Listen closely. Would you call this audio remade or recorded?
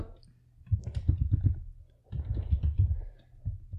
recorded